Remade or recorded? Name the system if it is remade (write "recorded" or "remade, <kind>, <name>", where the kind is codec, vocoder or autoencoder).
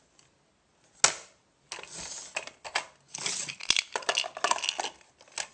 recorded